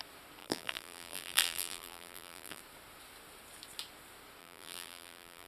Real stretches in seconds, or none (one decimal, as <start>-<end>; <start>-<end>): 0.0-0.4; 2.6-4.4